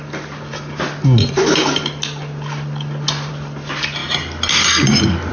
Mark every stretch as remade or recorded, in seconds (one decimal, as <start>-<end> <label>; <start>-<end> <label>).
0.0-5.3 recorded